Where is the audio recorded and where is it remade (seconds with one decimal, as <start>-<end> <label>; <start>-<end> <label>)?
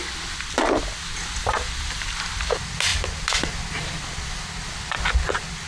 0.0-5.7 recorded